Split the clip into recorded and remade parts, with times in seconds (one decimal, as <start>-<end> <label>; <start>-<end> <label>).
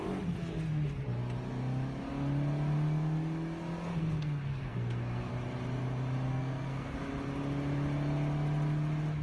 0.0-3.9 recorded; 3.9-5.3 remade; 5.3-6.3 recorded; 6.3-7.0 remade; 7.0-9.2 recorded